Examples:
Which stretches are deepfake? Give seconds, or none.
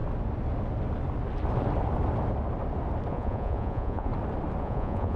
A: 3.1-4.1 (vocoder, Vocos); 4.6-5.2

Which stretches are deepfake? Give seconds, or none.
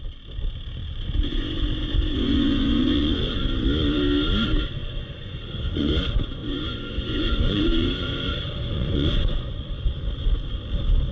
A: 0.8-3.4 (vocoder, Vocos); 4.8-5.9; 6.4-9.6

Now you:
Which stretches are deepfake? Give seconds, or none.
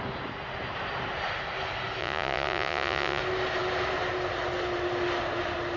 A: 2.0-3.2 (vocoder, Vocos)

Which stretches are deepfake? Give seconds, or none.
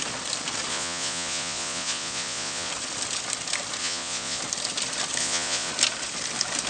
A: 0.7-2.7 (vocoder, Vocos); 3.8-4.4; 5.2-5.7